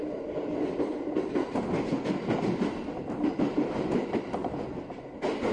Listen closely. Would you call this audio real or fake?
real